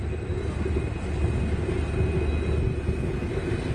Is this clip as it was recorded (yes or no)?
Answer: yes